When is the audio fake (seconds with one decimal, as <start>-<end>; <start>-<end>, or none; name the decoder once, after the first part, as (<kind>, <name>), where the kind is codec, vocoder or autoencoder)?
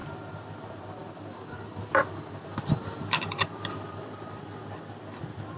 0.0-0.5 (vocoder, BigVGAN v2); 1.0-4.4